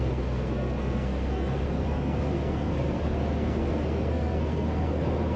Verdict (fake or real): fake